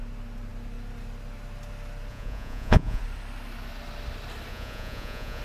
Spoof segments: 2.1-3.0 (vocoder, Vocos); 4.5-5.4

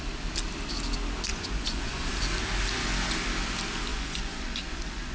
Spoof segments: 1.3-2.1 (vocoder, Vocos); 3.9-5.1

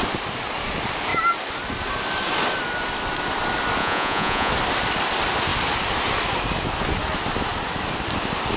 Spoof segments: 3.8-4.5 (vocoder, Vocos)